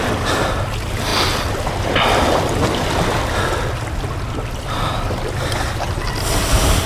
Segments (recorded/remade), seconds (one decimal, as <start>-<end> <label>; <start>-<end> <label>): 0.0-6.9 recorded